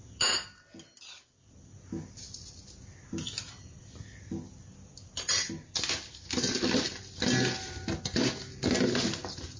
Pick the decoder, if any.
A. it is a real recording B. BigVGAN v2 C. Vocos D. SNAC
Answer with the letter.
A